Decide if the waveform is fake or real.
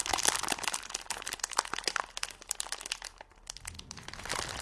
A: real